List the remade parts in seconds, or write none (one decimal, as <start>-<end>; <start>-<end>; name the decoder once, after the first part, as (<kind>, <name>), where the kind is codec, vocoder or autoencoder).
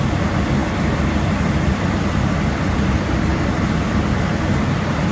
none